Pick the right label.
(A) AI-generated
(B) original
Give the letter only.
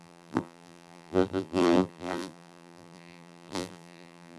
A